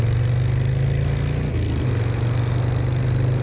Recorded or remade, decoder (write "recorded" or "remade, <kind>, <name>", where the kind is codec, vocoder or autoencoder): recorded